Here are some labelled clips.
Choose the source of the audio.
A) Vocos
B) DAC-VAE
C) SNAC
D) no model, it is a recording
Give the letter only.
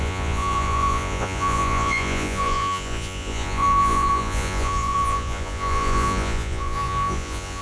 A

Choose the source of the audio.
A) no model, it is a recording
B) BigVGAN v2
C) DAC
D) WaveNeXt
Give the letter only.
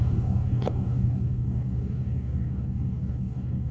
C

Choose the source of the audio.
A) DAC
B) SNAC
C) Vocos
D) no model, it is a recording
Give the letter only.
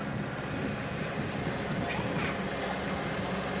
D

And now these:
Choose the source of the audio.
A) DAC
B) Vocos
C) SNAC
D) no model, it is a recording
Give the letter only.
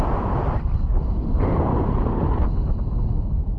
D